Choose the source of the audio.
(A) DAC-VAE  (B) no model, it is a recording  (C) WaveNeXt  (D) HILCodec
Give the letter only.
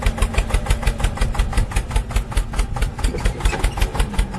B